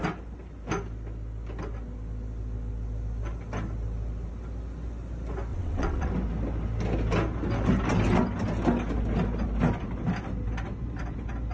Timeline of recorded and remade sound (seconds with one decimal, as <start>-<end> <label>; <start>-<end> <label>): 0.0-5.5 recorded; 5.5-6.1 remade; 6.1-11.5 recorded